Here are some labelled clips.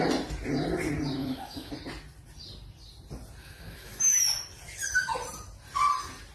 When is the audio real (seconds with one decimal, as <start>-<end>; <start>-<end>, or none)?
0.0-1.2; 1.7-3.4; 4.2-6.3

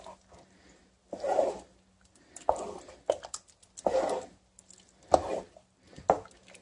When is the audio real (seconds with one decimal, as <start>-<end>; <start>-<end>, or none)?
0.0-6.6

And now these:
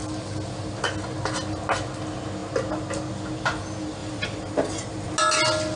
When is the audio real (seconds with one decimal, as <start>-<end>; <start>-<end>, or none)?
0.0-4.0; 4.5-5.8

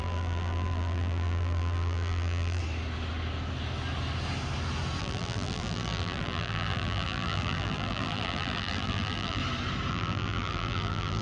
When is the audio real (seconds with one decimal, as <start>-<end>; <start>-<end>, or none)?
2.6-5.0; 9.4-9.9

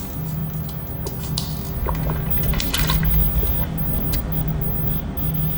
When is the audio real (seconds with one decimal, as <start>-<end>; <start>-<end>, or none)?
0.0-5.6

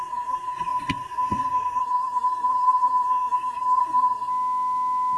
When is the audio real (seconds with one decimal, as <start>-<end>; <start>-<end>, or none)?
4.3-5.2

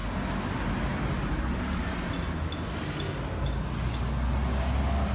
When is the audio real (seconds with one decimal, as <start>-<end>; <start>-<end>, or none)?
0.0-5.1